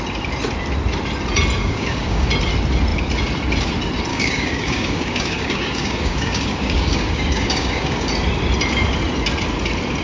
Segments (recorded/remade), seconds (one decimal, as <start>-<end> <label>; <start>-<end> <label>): 0.0-1.6 recorded; 1.6-2.3 remade; 2.3-4.1 recorded; 4.1-8.1 remade; 8.1-10.0 recorded